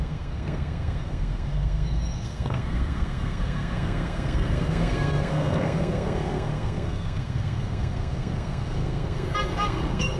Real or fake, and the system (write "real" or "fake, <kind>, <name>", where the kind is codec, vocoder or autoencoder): fake, codec, SNAC